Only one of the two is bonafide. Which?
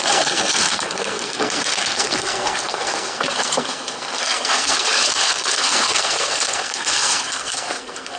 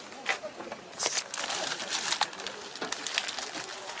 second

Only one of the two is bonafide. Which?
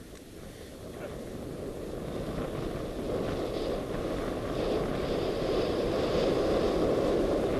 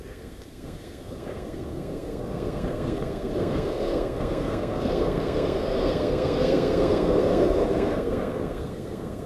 first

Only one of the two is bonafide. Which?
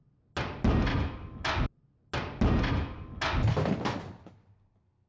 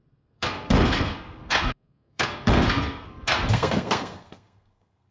first